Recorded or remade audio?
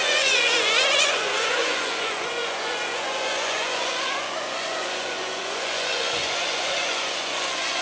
remade